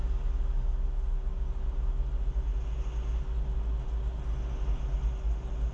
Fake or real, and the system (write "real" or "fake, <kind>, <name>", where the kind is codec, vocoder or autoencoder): real